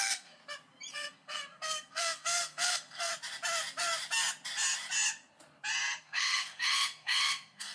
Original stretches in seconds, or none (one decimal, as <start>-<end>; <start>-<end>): 0.4-0.9; 3.1-6.0